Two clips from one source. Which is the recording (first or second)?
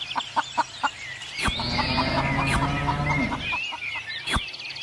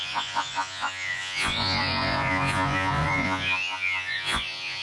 first